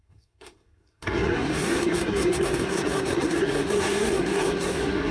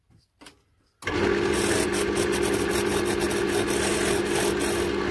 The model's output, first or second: first